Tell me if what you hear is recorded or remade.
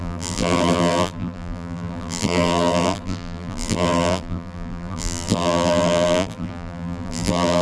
remade